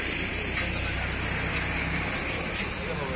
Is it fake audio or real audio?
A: real